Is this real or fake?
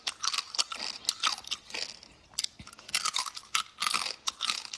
real